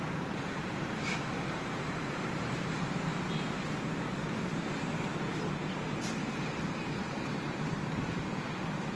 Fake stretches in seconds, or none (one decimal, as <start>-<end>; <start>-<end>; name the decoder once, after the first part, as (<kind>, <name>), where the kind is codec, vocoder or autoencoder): 0.0-3.1 (vocoder, BigVGAN v2); 4.0-9.0